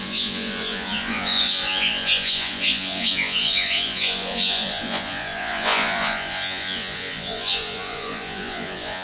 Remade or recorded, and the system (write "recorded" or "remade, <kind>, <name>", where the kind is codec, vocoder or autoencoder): remade, vocoder, Vocos